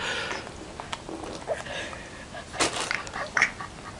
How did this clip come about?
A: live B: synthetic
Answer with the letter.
A